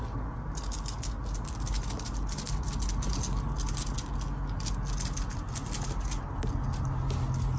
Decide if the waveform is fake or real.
real